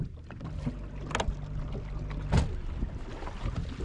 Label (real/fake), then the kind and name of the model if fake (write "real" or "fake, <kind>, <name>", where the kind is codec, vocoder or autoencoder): real